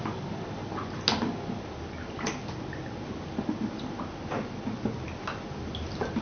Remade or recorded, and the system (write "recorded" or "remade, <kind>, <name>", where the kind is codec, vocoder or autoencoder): recorded